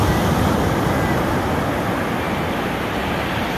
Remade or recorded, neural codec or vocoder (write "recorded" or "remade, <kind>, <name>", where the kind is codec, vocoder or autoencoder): recorded